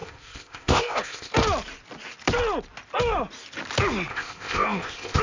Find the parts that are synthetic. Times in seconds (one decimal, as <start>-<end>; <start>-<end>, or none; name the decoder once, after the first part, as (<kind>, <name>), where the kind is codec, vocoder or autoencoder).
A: 0.0-1.3 (codec, ZipCodec); 4.1-5.2